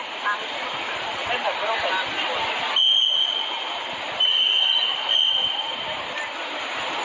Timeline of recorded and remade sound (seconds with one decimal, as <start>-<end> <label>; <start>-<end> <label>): 0.0-7.0 recorded